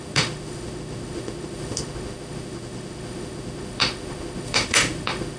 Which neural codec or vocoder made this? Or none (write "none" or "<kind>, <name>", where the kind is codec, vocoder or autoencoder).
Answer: autoencoder, DAC-VAE